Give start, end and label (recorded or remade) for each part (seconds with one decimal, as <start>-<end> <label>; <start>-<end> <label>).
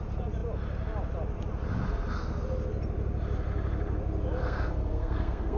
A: 0.0-4.4 recorded; 4.4-5.6 remade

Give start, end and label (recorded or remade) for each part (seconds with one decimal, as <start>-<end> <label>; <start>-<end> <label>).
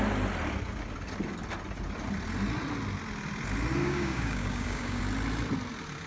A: 0.0-3.8 recorded; 3.8-5.0 remade; 5.0-6.1 recorded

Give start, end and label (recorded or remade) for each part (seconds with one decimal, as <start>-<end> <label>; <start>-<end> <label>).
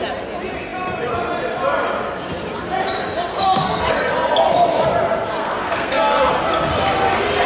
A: 0.0-3.3 recorded; 3.3-3.9 remade; 3.9-5.4 recorded; 5.4-6.3 remade; 6.3-7.5 recorded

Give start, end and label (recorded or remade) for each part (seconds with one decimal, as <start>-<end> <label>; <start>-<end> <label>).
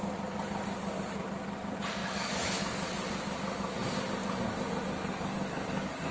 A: 0.0-2.0 recorded; 2.0-2.6 remade; 2.6-6.1 recorded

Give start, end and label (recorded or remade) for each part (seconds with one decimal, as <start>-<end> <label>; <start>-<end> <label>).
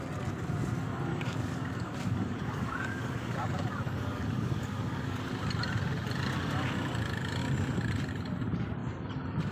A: 0.0-1.1 recorded; 1.1-5.2 remade; 5.2-9.5 recorded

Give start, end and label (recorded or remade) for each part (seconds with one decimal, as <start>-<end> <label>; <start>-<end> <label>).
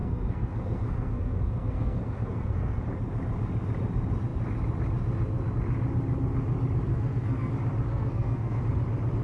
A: 0.0-2.8 remade; 2.8-6.9 recorded; 6.9-7.5 remade; 7.5-7.9 recorded; 7.9-8.6 remade; 8.6-9.2 recorded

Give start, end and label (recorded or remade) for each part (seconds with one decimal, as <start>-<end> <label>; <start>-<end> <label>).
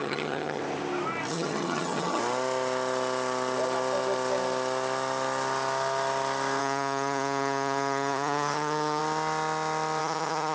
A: 0.0-0.6 remade; 0.6-1.3 recorded; 1.3-2.2 remade; 2.2-6.6 recorded; 6.6-9.0 remade; 9.0-10.0 recorded; 10.0-10.5 remade